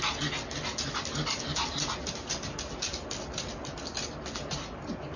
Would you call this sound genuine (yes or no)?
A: yes